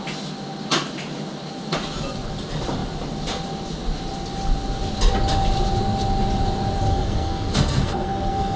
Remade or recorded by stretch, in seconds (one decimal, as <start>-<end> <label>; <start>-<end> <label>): 0.0-6.9 recorded; 6.9-8.6 remade